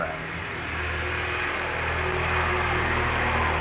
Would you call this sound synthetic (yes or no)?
no